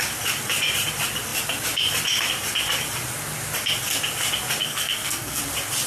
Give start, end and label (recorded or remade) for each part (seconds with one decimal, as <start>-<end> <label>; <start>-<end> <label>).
0.0-4.6 recorded; 4.6-5.4 remade; 5.4-5.9 recorded

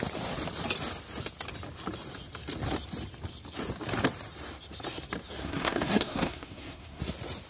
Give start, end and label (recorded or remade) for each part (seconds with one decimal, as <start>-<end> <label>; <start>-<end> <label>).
0.0-5.4 recorded; 5.4-7.0 remade; 7.0-7.5 recorded

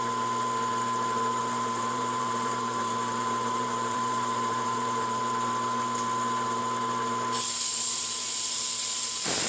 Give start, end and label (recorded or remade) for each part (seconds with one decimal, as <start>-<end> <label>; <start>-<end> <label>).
0.0-1.4 recorded; 1.4-5.2 remade; 5.2-7.7 recorded; 7.7-8.6 remade; 8.6-9.5 recorded

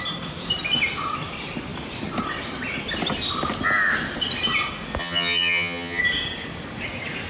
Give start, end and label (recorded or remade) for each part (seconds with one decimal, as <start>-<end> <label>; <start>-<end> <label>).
0.0-5.0 recorded; 5.0-6.0 remade; 6.0-7.3 recorded

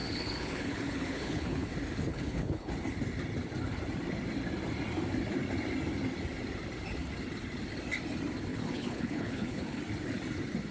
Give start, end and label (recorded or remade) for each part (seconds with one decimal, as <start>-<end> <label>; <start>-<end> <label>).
0.0-1.7 remade; 1.7-2.1 recorded; 2.1-2.7 remade; 2.7-8.5 recorded; 8.5-9.8 remade; 9.8-10.7 recorded

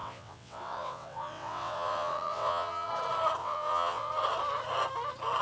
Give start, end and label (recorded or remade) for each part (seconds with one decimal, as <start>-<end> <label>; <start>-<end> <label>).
0.0-2.9 remade; 2.9-3.4 recorded; 3.4-4.1 remade; 4.1-5.4 recorded

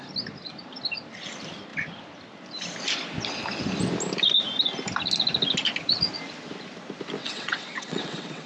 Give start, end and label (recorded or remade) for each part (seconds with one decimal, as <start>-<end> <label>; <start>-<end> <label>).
0.0-7.2 recorded; 7.2-8.5 remade